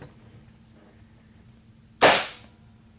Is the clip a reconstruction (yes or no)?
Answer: no